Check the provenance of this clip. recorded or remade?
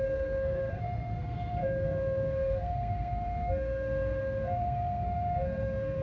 remade